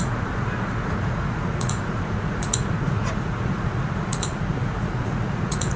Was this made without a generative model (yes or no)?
no